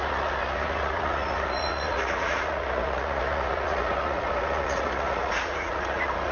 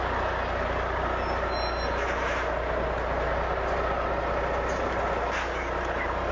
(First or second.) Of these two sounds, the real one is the second